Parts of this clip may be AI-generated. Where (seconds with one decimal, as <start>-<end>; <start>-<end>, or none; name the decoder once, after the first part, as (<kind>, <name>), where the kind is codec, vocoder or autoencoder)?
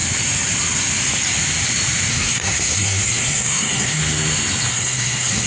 2.1-4.0 (codec, SNAC); 4.7-5.5